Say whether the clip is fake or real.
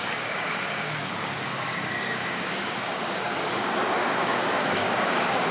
fake